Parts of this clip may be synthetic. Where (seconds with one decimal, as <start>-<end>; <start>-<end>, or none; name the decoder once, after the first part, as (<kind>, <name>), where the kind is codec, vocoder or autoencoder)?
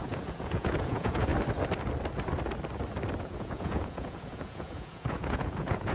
0.0-1.3 (vocoder, Vocos); 3.2-5.9